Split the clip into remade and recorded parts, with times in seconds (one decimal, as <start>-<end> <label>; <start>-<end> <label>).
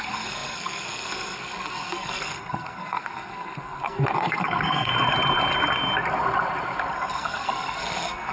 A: 0.0-4.9 remade; 4.9-7.1 recorded; 7.1-8.3 remade